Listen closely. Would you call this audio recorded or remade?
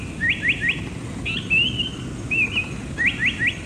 recorded